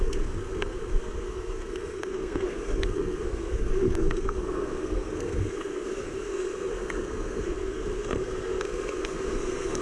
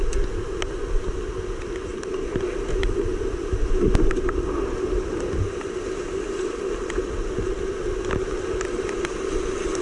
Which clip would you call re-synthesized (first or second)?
first